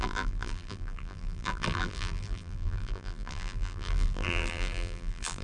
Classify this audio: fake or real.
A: fake